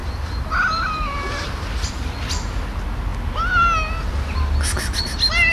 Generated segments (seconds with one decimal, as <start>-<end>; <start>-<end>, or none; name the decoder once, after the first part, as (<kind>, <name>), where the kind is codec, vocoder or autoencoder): 0.0-1.9 (vocoder, BigVGAN v2)